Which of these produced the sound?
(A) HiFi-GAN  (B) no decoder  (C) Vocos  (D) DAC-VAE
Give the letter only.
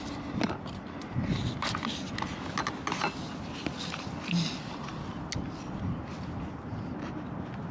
B